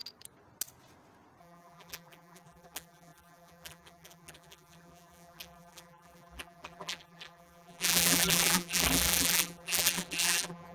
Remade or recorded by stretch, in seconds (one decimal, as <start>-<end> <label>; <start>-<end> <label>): 0.0-1.4 recorded; 1.4-10.7 remade